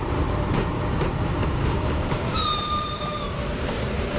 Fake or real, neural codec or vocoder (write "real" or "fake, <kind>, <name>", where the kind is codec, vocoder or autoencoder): fake, vocoder, BigVGAN v2